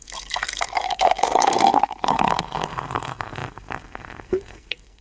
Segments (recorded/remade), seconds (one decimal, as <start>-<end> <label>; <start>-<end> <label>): 0.0-5.0 remade